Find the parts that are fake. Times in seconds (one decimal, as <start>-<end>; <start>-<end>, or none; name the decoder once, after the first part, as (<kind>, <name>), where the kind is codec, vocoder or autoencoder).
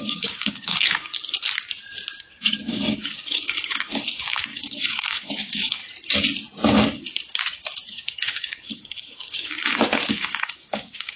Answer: 0.0-1.1 (codec, DAC); 2.2-5.8; 7.9-11.2